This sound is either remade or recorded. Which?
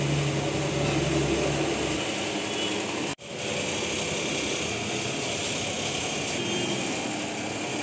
recorded